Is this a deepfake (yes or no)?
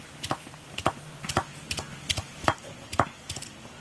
no